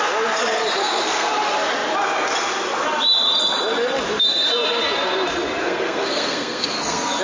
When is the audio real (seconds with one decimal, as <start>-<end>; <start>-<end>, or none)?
0.0-0.8; 1.3-5.6